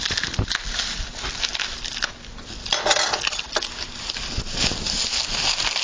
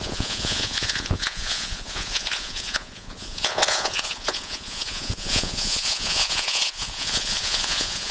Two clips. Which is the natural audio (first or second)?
first